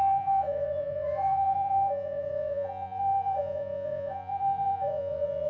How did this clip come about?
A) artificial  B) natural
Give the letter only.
A